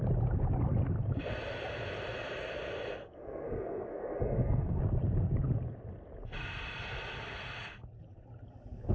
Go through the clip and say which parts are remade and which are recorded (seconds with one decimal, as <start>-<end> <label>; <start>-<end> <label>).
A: 0.0-3.0 recorded; 3.0-4.8 remade; 4.8-8.9 recorded